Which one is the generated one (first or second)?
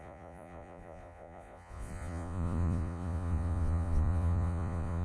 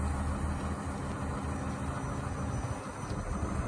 first